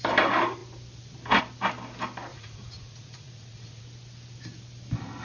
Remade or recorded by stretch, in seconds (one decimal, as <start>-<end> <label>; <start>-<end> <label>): 0.0-2.3 recorded; 2.3-3.8 remade; 3.8-5.2 recorded